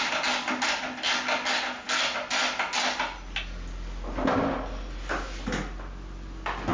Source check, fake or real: real